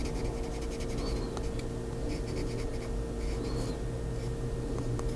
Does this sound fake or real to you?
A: real